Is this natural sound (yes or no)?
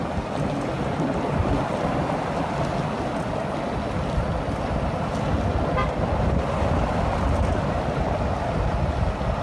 yes